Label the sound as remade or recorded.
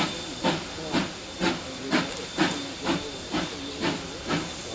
recorded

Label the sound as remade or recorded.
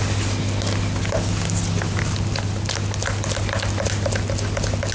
recorded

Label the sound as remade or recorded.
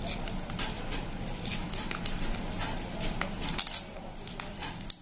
recorded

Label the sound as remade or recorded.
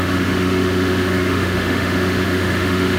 remade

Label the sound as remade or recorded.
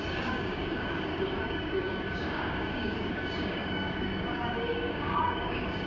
remade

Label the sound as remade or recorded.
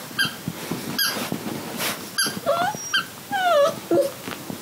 recorded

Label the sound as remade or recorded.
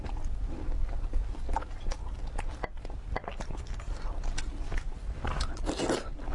recorded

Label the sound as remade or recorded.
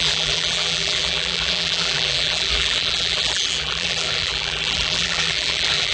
remade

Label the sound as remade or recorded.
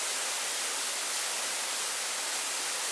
recorded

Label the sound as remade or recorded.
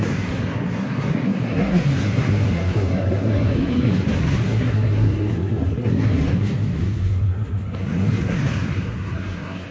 remade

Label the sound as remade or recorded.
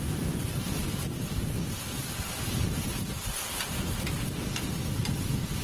recorded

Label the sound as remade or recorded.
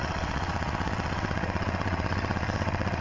remade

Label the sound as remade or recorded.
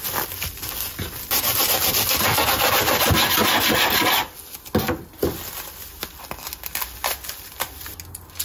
recorded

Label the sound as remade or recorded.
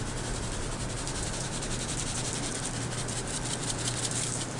remade